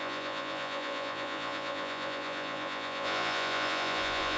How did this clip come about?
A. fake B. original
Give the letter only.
A